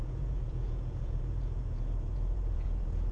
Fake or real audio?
fake